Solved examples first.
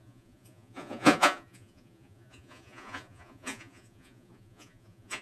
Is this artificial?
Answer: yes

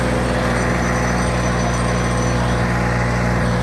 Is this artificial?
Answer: no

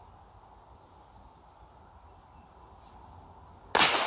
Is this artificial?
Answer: no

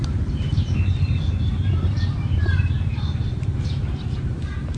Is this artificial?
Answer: yes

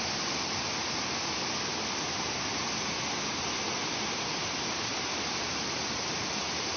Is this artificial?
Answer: no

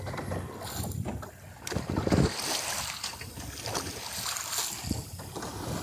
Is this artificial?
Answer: no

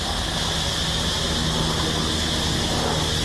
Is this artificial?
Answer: no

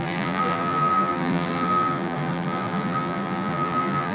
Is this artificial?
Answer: yes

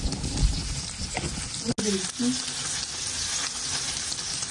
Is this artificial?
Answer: no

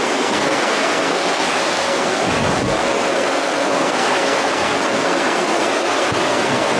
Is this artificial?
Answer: yes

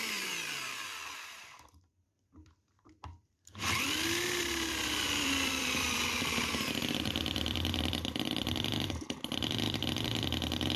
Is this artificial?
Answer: yes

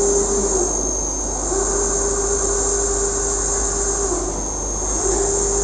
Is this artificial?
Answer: no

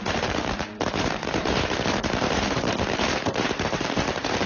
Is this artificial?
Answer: yes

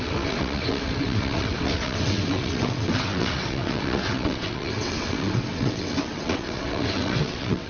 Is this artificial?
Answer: yes